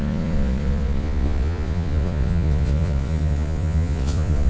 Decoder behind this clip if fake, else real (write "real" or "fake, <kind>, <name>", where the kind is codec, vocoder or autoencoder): fake, vocoder, Vocos